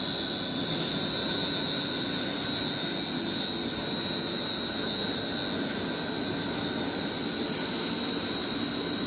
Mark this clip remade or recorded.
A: recorded